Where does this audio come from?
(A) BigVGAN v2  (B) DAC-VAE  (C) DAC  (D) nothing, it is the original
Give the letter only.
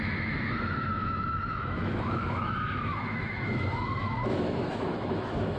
B